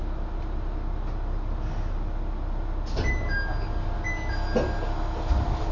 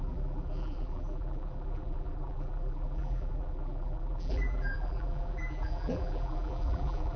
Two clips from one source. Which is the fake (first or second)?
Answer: second